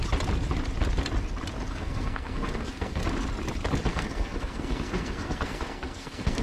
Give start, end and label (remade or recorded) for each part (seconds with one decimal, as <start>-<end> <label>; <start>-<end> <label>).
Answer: 0.0-1.7 recorded; 1.7-3.0 remade; 3.0-3.9 recorded; 3.9-6.4 remade